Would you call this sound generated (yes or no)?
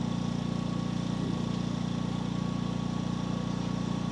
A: no